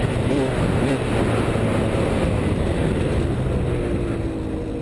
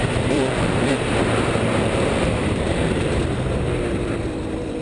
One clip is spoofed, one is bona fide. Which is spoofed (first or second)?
second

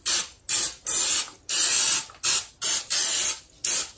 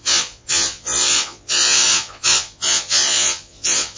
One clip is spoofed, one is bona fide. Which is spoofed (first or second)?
second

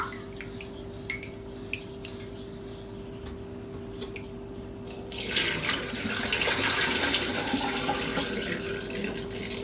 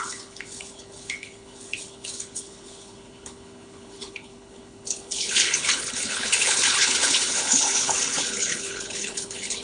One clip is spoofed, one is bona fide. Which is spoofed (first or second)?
second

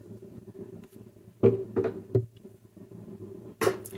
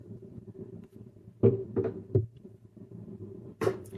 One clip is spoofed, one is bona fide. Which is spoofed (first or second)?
second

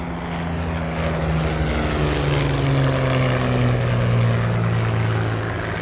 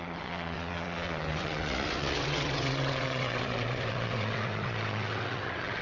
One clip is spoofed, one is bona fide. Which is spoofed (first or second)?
second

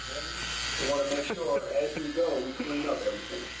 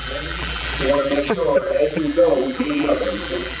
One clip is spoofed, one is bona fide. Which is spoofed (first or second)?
second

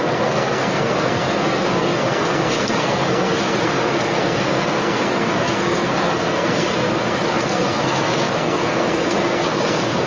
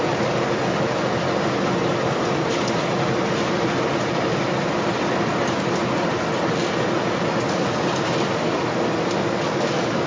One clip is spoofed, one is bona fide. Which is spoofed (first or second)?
first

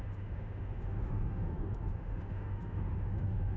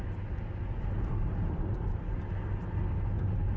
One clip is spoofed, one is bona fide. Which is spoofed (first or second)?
first